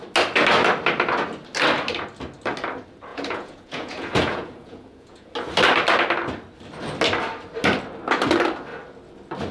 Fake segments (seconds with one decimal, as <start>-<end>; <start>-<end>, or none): 3.1-5.3